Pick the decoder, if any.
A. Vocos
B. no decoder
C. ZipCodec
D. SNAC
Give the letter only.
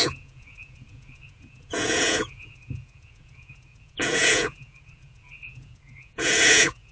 A